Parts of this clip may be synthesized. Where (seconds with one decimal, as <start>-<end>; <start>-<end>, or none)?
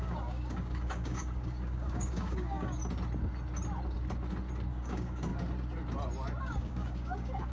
0.0-2.8; 4.7-5.3; 6.4-7.5